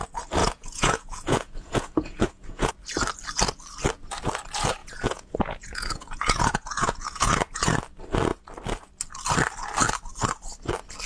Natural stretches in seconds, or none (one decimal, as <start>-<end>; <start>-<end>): 0.0-0.4; 2.7-4.8; 7.6-11.1